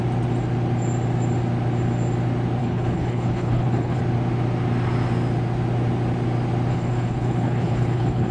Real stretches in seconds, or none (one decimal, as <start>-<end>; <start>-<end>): 0.0-2.6; 4.0-6.7